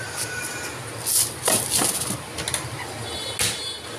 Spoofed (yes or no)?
no